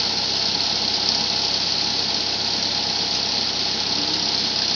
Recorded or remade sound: recorded